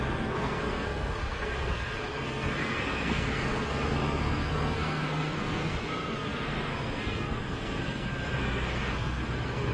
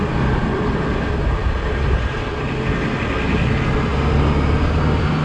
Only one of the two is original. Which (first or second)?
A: second